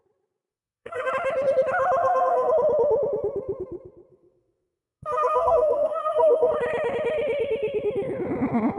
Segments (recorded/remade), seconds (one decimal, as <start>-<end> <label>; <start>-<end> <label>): 0.0-0.5 recorded; 0.5-1.1 remade; 1.1-2.0 recorded; 2.0-2.5 remade; 2.5-4.1 recorded; 4.1-6.5 remade; 6.5-8.8 recorded